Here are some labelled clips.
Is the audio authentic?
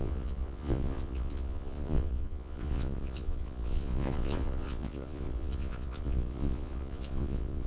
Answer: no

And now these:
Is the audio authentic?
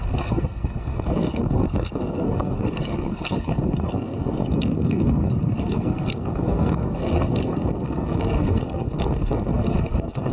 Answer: no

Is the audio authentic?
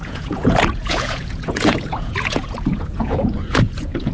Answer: no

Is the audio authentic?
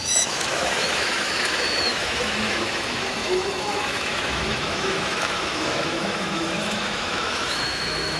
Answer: no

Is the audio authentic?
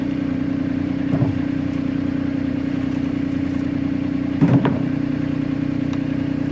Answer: no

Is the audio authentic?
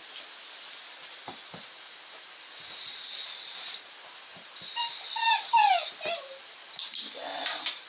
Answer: yes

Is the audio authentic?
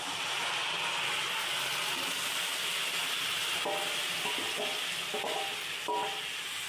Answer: yes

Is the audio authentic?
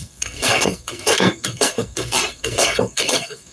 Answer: no